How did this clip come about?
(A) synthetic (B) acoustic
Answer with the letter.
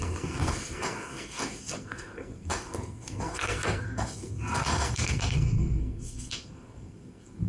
A